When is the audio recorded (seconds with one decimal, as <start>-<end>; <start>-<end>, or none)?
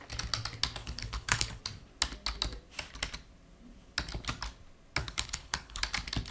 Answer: 0.0-0.8; 1.6-5.0; 5.8-6.3